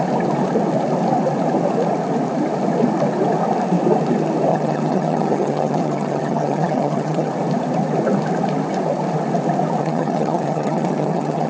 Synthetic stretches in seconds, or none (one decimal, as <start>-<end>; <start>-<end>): 4.5-7.3; 9.8-11.5